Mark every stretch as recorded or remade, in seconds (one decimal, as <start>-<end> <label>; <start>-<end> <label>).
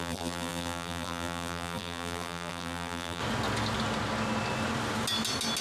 0.0-3.2 remade; 3.2-5.6 recorded